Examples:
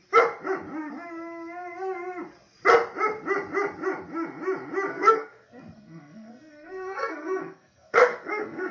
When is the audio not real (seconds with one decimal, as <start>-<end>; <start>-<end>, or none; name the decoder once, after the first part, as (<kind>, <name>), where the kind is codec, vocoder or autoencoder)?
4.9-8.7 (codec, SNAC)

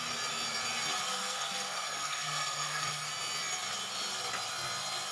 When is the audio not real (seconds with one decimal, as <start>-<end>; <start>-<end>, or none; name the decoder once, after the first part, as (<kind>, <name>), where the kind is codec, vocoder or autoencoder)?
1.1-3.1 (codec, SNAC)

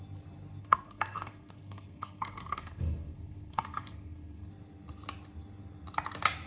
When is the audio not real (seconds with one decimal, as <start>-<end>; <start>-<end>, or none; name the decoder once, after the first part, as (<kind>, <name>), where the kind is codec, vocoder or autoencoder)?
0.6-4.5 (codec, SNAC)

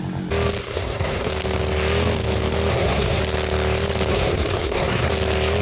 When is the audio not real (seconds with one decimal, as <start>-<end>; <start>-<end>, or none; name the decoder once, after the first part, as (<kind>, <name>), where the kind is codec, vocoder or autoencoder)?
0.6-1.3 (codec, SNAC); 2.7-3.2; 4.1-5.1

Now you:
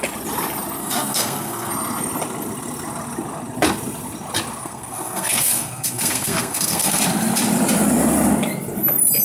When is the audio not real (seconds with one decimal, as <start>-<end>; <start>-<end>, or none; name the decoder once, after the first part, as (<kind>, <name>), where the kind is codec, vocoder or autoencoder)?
0.8-1.7 (codec, SNAC); 4.6-7.0

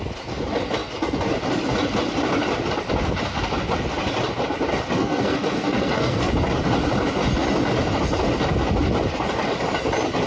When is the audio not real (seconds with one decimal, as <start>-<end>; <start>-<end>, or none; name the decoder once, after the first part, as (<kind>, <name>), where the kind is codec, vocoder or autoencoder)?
5.0-6.3 (codec, SNAC)

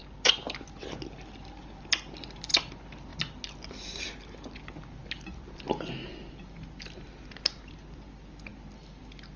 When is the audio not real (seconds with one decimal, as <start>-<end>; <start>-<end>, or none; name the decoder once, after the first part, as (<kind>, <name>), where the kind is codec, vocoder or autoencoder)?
none

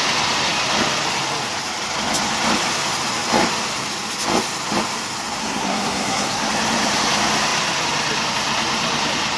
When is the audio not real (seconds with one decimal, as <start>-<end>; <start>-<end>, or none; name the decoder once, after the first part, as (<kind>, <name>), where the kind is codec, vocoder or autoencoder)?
5.4-6.5 (codec, SNAC)